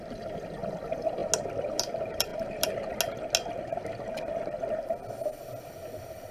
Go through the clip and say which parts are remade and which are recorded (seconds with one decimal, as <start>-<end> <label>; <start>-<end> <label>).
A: 0.0-1.2 remade; 1.2-1.8 recorded; 1.8-2.3 remade; 2.3-6.3 recorded